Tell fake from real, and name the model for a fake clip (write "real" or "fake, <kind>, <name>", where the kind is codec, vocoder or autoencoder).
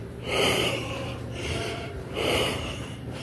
fake, vocoder, BigVGAN v2